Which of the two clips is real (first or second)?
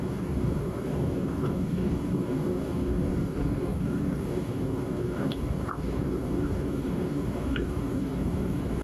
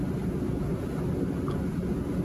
second